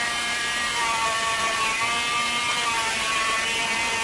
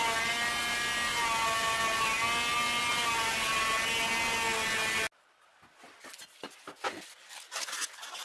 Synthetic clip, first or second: first